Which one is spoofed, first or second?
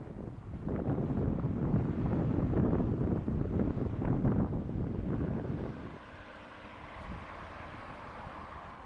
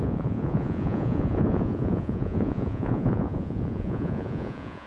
second